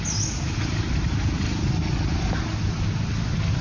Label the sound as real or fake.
real